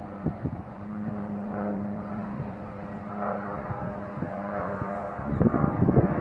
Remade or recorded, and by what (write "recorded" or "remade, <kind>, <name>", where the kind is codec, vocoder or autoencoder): remade, vocoder, Vocos